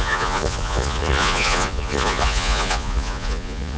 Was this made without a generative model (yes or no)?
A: no